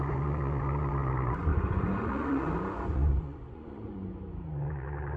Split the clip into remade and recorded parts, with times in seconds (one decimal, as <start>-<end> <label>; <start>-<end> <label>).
0.0-5.2 remade